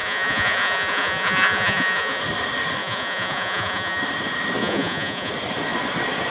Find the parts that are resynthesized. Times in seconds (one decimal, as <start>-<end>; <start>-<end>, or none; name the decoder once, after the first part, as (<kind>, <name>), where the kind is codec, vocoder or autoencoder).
0.0-2.2 (vocoder, Vocos); 2.8-4.0; 4.6-5.3